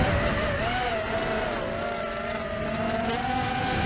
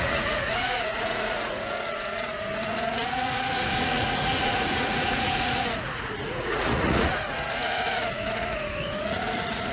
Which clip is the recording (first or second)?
first